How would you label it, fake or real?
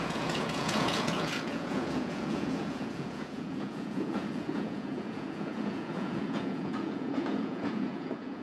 fake